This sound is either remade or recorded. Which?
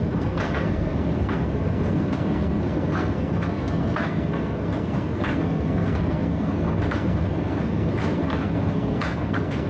remade